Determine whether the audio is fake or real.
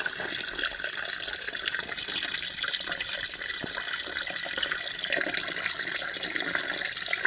real